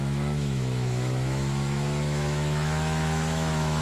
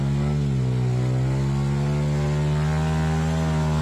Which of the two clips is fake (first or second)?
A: first